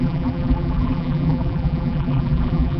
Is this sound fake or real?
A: fake